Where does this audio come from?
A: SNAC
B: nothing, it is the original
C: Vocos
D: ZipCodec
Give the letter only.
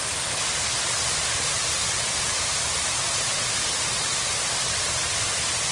B